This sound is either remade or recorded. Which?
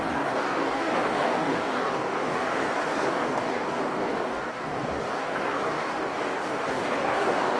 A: remade